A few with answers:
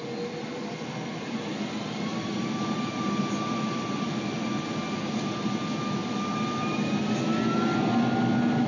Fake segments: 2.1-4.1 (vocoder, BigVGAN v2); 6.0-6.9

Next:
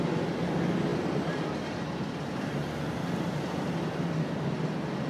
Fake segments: 0.9-4.0 (vocoder, BigVGAN v2)

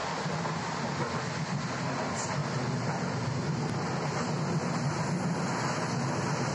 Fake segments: none